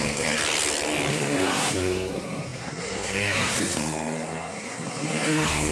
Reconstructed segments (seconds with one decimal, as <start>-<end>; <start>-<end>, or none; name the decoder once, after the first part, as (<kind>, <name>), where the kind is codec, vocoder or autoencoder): 0.0-0.4 (codec, SNAC); 1.1-5.7